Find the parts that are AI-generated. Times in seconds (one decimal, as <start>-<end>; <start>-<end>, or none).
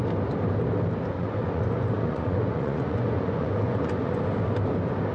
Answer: 1.1-4.2